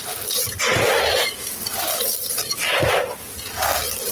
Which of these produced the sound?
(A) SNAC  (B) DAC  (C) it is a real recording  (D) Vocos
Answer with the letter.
C